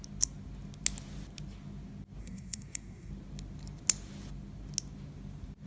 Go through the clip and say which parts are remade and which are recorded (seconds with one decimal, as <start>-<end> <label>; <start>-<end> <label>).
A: 0.0-2.2 recorded; 2.2-3.1 remade; 3.1-5.7 recorded